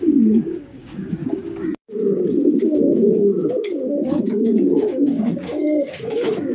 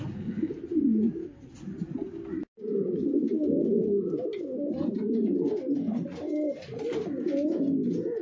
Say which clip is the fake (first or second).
first